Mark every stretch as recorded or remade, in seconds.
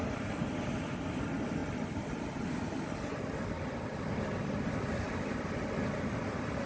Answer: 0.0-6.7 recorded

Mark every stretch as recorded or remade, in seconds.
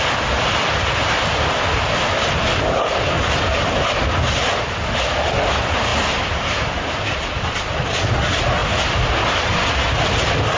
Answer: 0.0-10.6 recorded